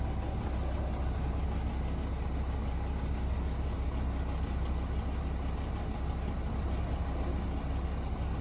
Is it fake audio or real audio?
real